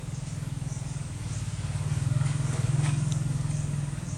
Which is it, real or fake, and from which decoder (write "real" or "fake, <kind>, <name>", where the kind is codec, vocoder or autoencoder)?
fake, codec, DAC